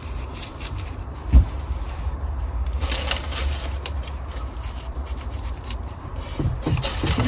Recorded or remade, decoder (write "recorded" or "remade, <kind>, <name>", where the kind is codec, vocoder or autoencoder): remade, vocoder, BigVGAN v2